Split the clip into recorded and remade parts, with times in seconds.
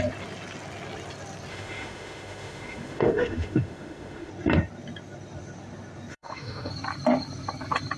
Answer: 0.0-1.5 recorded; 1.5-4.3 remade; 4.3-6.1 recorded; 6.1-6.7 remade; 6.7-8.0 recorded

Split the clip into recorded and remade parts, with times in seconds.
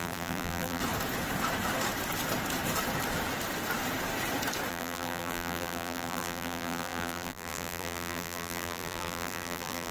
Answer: 0.0-0.8 remade; 0.8-4.7 recorded; 4.7-9.9 remade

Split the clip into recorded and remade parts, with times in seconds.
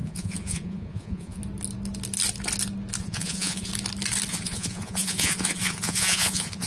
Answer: 0.0-1.4 remade; 1.4-3.0 recorded; 3.0-3.7 remade; 3.7-4.3 recorded; 4.3-6.7 remade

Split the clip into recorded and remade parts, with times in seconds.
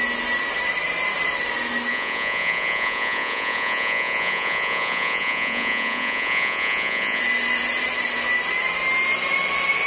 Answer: 0.0-1.9 recorded; 1.9-7.2 remade; 7.2-9.9 recorded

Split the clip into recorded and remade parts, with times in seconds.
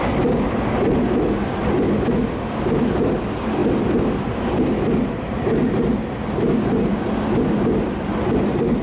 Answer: 0.0-8.8 recorded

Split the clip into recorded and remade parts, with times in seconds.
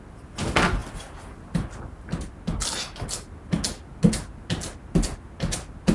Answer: 0.0-5.9 recorded